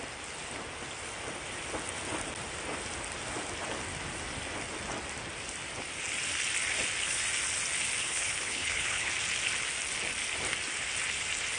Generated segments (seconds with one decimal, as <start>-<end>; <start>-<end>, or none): 8.0-9.1